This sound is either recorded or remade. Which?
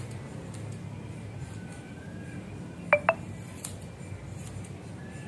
recorded